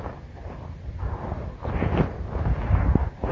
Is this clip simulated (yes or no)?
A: no